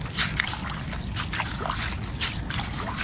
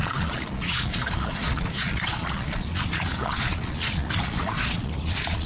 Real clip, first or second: first